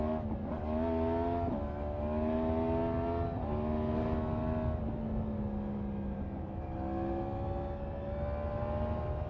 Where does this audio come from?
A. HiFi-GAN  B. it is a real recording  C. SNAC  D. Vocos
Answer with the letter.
B